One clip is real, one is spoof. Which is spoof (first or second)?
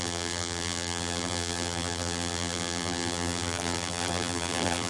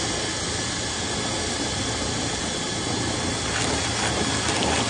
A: first